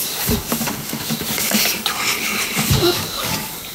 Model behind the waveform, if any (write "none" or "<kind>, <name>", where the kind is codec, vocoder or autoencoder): codec, DAC